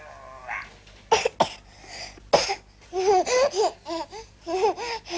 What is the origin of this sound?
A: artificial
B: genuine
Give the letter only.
B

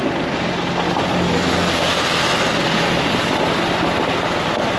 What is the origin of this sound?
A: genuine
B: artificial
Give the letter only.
A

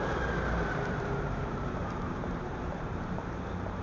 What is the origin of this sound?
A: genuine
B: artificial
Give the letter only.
B